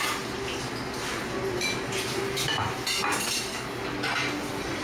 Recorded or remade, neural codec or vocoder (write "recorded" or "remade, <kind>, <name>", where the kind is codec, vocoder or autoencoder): recorded